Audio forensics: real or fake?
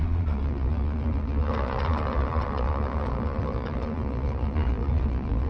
fake